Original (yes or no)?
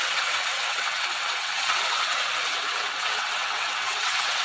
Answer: no